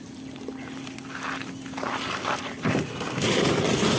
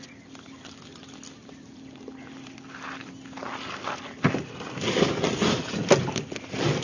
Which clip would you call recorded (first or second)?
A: second